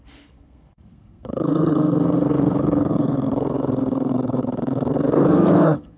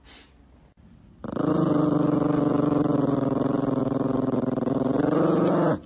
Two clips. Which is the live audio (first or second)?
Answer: second